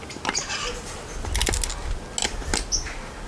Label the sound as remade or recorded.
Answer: recorded